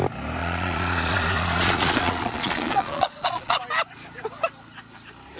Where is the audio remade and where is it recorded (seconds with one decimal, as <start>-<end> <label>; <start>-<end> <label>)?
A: 0.0-0.4 recorded; 0.4-3.6 remade; 3.6-5.4 recorded

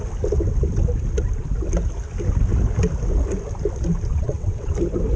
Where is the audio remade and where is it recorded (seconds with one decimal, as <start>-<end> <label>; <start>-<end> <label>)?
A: 0.0-4.1 recorded; 4.1-4.7 remade; 4.7-5.2 recorded

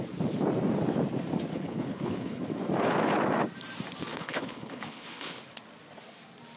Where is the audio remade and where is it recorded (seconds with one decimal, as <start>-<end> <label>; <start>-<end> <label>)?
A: 0.0-1.5 recorded; 1.5-2.4 remade; 2.4-4.1 recorded; 4.1-5.4 remade; 5.4-6.6 recorded

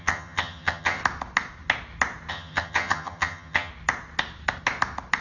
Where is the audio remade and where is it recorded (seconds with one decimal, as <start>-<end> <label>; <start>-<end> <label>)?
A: 0.0-1.0 remade; 1.0-2.3 recorded; 2.3-3.7 remade; 3.7-5.2 recorded

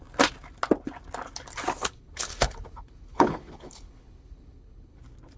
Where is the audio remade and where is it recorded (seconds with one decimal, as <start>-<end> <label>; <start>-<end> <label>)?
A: 0.0-1.8 recorded; 1.8-5.0 remade; 5.0-5.4 recorded

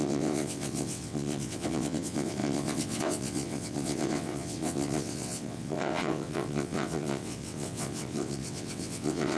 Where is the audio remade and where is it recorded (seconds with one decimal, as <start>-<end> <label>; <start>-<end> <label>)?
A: 0.0-9.4 remade

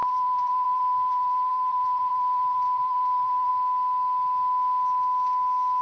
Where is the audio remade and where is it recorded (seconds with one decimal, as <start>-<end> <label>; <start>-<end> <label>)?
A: 0.0-3.5 remade; 3.5-5.8 recorded

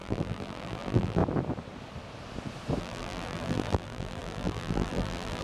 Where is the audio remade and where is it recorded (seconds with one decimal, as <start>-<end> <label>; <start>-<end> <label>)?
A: 0.0-1.2 remade; 1.2-2.8 recorded; 2.8-5.4 remade